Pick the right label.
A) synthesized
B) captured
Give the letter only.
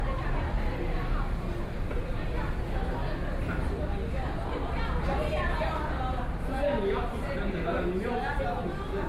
B